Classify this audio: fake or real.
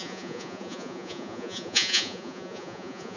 fake